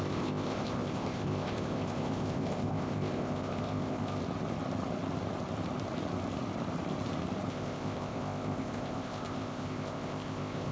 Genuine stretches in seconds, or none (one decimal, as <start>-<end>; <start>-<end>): 4.2-7.5